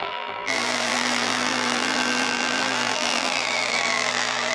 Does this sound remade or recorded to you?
remade